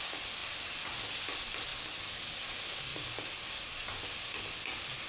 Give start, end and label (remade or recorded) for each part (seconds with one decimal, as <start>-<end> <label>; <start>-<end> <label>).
0.0-0.4 recorded; 0.4-1.2 remade; 1.2-1.7 recorded; 1.7-2.3 remade; 2.3-2.9 recorded; 2.9-3.9 remade; 3.9-5.1 recorded